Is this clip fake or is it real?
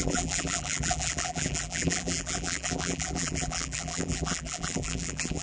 fake